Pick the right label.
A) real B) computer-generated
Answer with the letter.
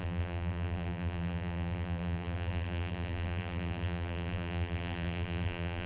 B